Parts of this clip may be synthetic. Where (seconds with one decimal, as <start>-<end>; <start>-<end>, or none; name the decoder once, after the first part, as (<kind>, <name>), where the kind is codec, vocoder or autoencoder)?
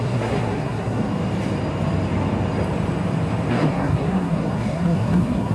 0.0-1.1 (codec, SNAC); 3.5-5.5